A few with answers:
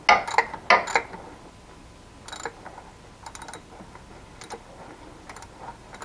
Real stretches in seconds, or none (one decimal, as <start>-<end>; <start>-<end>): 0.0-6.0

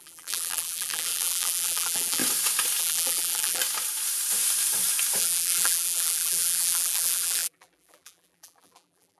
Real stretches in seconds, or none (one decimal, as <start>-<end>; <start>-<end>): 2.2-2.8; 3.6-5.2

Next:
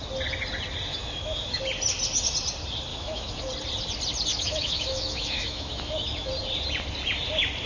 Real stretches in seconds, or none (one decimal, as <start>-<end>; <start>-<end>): 0.0-0.9; 1.6-2.9; 3.5-4.3; 6.3-7.7

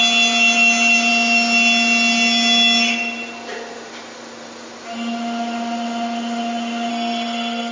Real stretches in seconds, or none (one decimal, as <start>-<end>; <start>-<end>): 0.0-6.9